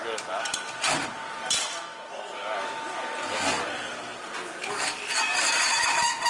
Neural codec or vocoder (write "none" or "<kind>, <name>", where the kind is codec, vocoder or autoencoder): none